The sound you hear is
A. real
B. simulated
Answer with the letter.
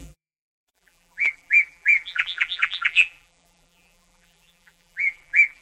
B